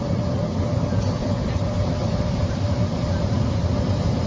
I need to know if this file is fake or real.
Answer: real